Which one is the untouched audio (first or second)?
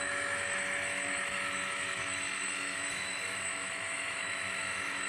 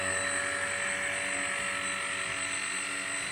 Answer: second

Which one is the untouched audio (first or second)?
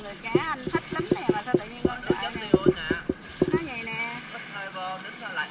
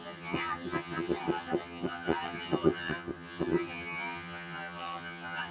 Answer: first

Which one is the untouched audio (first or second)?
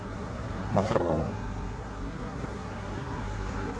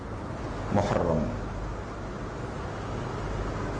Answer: second